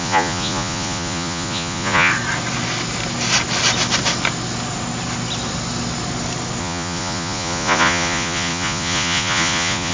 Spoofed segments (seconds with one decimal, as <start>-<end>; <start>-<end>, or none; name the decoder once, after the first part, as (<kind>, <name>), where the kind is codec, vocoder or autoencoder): 0.0-2.1 (vocoder, Vocos); 6.6-9.9